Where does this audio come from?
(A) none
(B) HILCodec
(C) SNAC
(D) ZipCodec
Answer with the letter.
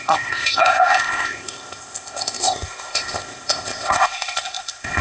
D